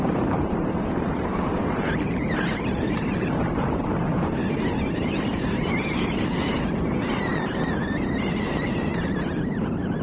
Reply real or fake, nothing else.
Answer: fake